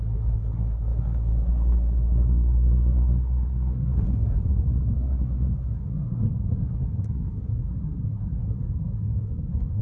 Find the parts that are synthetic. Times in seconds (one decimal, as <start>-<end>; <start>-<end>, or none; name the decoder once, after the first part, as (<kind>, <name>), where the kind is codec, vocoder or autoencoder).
0.0-9.8 (codec, SNAC)